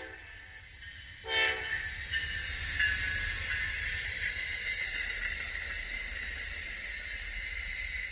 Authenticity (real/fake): real